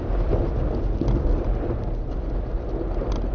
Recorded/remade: recorded